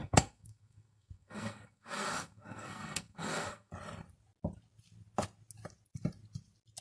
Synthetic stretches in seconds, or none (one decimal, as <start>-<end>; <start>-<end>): 0.0-3.7